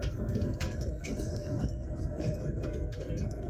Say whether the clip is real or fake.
fake